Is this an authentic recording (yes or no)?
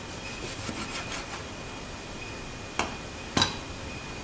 yes